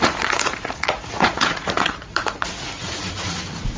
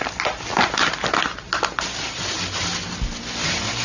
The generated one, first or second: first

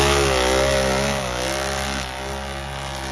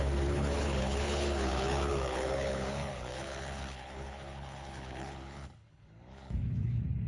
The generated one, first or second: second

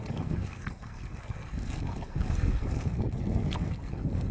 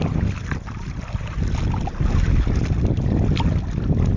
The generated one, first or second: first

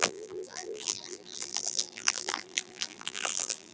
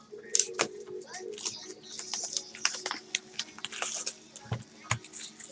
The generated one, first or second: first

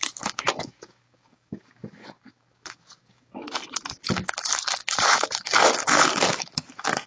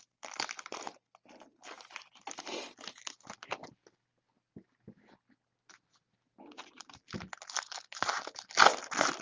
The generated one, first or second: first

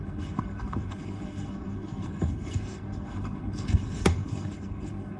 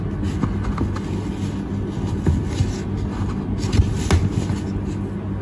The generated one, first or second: first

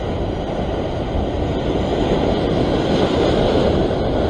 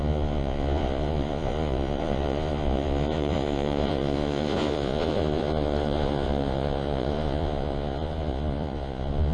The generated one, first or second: second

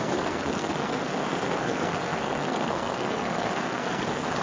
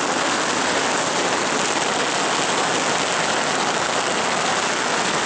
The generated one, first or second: first